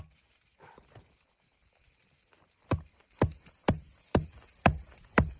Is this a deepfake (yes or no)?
no